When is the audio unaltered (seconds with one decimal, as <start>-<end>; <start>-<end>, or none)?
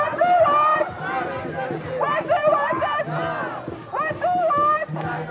0.0-5.3